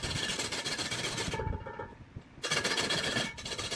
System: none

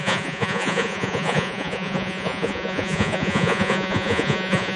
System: vocoder, Vocos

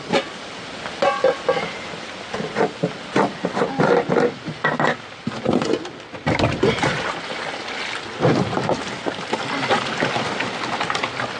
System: none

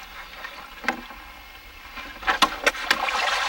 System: none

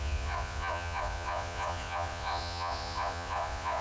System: vocoder, Vocos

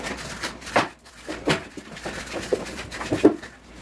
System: vocoder, BigVGAN v2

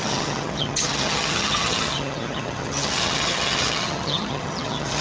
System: vocoder, HiFi-GAN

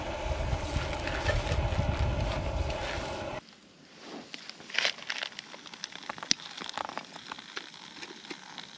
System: none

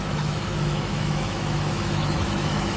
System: autoencoder, DAC-VAE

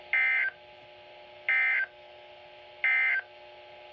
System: none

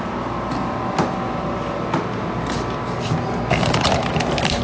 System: none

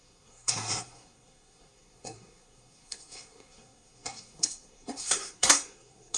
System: codec, SNAC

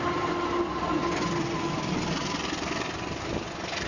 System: none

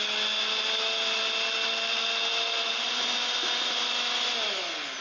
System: none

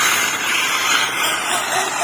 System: vocoder, BigVGAN v2